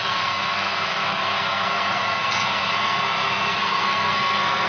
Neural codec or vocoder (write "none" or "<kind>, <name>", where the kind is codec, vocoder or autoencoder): codec, SNAC